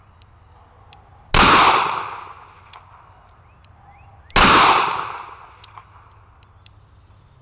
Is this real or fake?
real